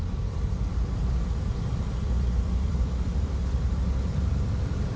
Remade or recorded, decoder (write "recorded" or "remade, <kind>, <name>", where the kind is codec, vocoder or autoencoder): remade, vocoder, BigVGAN v2